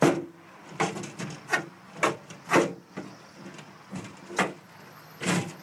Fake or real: real